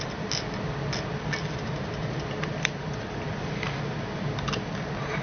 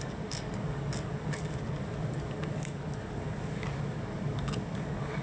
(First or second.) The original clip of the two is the first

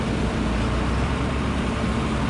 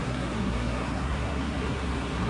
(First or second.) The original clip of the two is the first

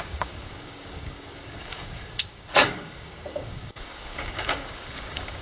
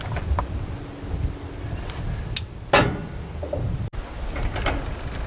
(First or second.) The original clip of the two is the second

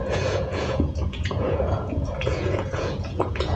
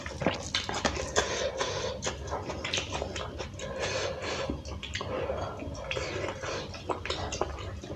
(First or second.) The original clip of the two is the second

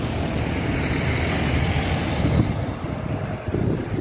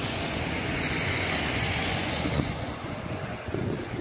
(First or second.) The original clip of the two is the first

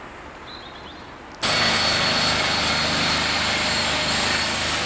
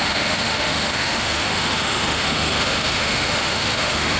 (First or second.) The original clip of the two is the first